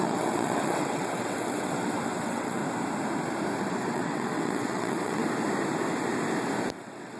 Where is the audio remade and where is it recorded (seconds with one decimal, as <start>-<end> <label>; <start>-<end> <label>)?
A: 0.0-2.6 remade; 2.6-3.6 recorded; 3.6-5.2 remade; 5.2-6.8 recorded; 6.8-7.2 remade

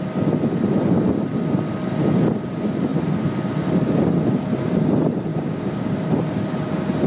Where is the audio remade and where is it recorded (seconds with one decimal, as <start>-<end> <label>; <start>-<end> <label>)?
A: 0.0-5.3 recorded; 5.3-5.9 remade; 5.9-7.1 recorded

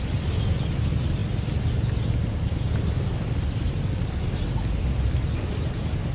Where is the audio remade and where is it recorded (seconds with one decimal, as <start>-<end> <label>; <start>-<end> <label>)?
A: 0.0-6.1 recorded

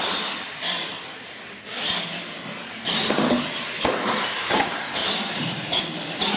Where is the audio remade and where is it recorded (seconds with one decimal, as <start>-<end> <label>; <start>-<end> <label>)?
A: 0.0-6.4 recorded

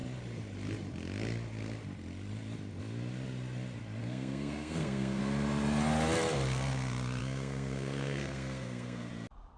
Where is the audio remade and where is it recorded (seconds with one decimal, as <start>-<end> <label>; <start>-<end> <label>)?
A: 0.0-4.0 recorded; 4.0-5.2 remade; 5.2-7.2 recorded; 7.2-9.1 remade; 9.1-9.6 recorded